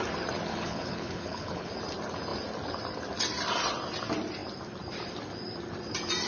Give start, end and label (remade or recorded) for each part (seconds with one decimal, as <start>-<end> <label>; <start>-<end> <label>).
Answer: 0.0-0.5 recorded; 0.5-1.7 remade; 1.7-6.3 recorded